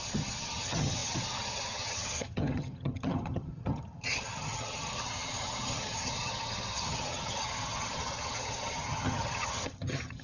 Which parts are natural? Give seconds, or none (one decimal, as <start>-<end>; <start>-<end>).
none